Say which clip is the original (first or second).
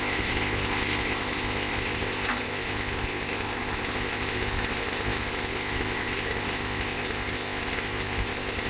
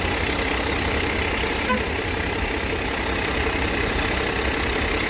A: second